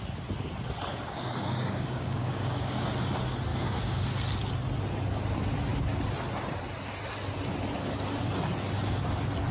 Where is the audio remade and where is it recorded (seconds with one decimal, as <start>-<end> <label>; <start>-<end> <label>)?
0.0-0.9 recorded; 0.9-2.9 remade; 2.9-3.5 recorded; 3.5-4.0 remade; 4.0-9.5 recorded